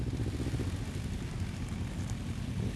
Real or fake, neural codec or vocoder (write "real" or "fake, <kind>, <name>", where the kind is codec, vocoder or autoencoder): real